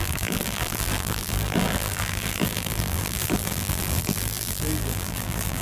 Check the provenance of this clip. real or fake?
fake